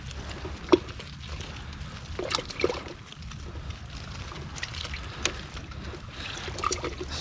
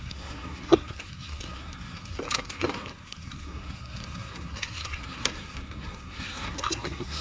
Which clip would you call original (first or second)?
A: first